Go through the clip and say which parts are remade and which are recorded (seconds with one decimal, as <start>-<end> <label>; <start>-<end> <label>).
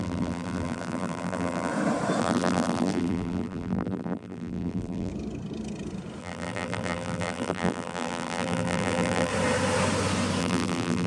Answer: 0.0-1.7 remade; 1.7-2.2 recorded; 2.2-5.1 remade; 5.1-6.2 recorded; 6.2-9.3 remade; 9.3-10.4 recorded; 10.4-11.1 remade